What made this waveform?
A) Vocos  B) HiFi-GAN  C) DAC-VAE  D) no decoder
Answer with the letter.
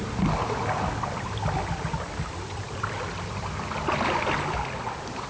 D